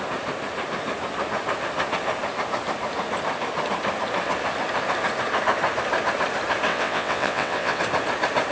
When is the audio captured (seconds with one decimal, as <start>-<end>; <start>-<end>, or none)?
0.0-6.7; 7.8-8.5